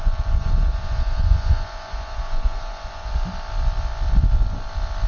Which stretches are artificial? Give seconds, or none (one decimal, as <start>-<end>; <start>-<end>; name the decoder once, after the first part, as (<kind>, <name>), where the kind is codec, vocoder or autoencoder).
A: 0.0-3.1 (vocoder, Vocos)